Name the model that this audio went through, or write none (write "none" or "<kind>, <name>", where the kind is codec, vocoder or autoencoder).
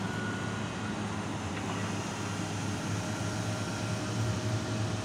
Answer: none